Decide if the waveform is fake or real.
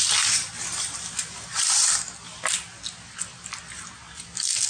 real